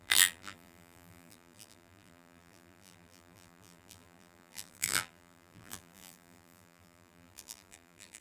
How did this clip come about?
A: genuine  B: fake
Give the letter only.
B